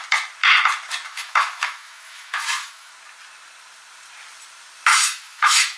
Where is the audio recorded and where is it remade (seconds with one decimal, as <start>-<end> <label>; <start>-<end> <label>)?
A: 0.0-1.1 recorded; 1.1-2.9 remade; 2.9-4.9 recorded; 4.9-5.8 remade